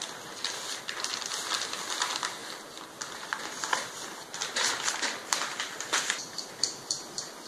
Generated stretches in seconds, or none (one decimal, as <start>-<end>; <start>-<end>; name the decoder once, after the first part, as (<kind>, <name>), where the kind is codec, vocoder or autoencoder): none